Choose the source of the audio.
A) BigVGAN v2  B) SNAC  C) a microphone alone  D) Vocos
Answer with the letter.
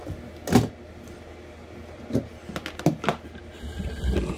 C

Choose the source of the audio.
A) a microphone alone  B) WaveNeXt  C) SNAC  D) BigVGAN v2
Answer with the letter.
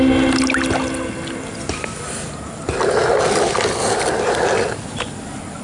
A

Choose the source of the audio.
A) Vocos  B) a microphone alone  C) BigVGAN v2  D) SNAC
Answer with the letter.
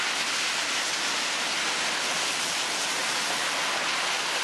B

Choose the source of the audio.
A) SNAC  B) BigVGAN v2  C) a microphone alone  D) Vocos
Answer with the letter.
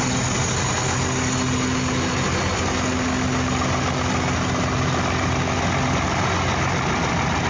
C